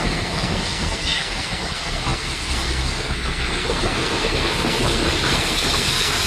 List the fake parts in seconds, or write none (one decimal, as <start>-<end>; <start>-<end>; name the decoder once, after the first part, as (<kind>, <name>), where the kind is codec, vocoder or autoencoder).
0.0-6.3 (codec, SNAC)